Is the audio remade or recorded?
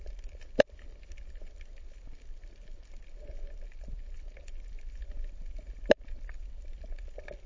recorded